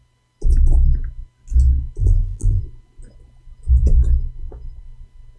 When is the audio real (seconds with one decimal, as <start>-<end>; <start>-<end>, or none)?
0.0-2.0; 2.6-5.4